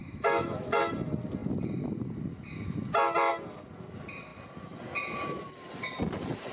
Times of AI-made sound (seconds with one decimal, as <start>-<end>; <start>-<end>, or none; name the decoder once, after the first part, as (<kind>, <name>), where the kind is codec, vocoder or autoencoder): 0.0-0.8 (autoencoder, DAC-VAE)